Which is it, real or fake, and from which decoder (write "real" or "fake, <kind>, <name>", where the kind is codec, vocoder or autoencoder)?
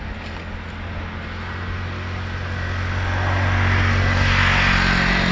real